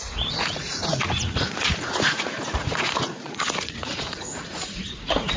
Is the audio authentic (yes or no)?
no